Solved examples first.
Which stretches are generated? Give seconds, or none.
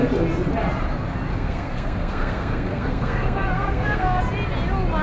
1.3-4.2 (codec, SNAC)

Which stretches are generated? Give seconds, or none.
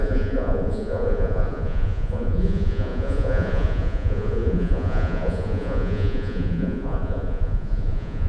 0.0-8.3 (vocoder, Vocos)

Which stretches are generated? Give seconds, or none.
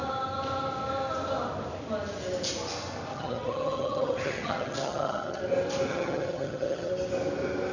3.1-5.4 (vocoder, HiFi-GAN); 5.9-6.9